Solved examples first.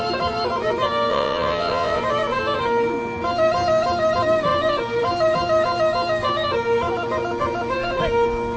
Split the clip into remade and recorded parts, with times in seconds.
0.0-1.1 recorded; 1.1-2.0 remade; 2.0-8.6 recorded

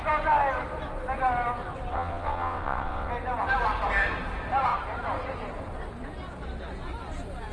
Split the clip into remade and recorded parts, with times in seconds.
0.0-1.9 recorded; 1.9-3.1 remade; 3.1-7.5 recorded

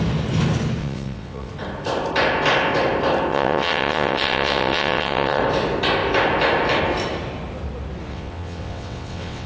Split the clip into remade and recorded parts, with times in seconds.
0.0-0.8 recorded; 0.8-1.5 remade; 1.5-3.3 recorded; 3.3-5.4 remade; 5.4-8.1 recorded; 8.1-9.5 remade

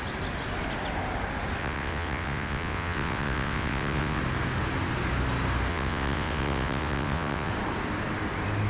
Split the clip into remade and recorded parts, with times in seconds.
0.0-1.6 recorded; 1.6-4.2 remade; 4.2-5.7 recorded; 5.7-7.5 remade; 7.5-8.7 recorded

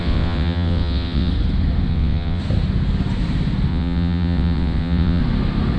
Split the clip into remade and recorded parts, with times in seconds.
0.0-1.3 remade; 1.3-1.9 recorded; 1.9-2.4 remade; 2.4-3.7 recorded; 3.7-5.2 remade; 5.2-5.8 recorded

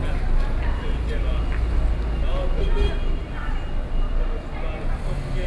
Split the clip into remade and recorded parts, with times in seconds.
0.0-5.5 recorded

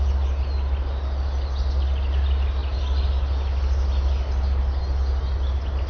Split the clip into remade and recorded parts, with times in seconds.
0.0-5.9 recorded

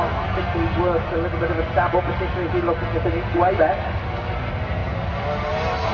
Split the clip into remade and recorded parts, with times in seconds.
0.0-5.9 recorded